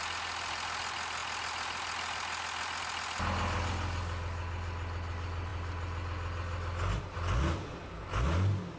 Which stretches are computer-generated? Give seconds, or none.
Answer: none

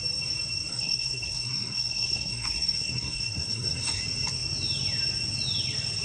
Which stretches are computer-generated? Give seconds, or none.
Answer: 0.7-4.0 (codec, SNAC)

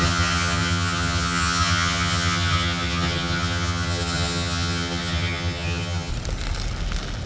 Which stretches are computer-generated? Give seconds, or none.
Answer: 0.0-6.1 (vocoder, HiFi-GAN)

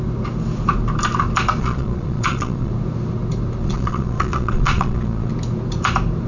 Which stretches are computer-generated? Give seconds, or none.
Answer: 1.6-2.7 (vocoder, Vocos); 3.6-5.3

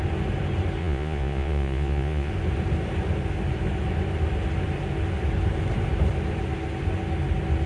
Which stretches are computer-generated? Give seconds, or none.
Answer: 0.8-2.3 (vocoder, Vocos)

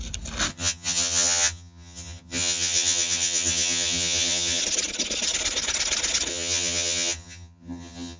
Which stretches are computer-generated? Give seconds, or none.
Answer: 0.5-4.6 (vocoder, HiFi-GAN); 6.3-8.2